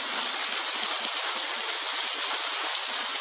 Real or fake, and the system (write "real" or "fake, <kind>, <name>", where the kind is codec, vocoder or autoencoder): real